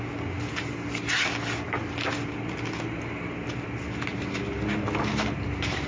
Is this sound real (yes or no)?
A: yes